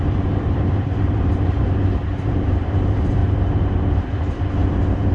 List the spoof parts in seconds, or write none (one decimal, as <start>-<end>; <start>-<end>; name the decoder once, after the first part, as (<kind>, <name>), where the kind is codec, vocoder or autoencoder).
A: 0.0-5.1 (vocoder, BigVGAN v2)